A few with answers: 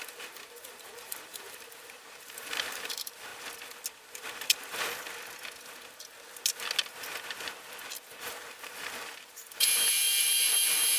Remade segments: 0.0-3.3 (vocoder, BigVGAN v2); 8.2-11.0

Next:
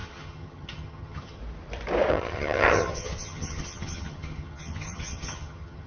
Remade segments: 0.0-1.4 (vocoder, HiFi-GAN); 2.1-5.9

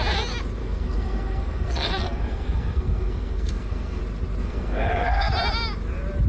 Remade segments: 0.6-4.0 (codec, SNAC); 4.4-5.3

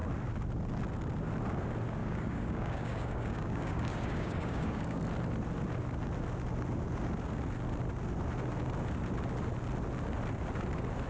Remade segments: 2.0-5.0 (codec, DAC)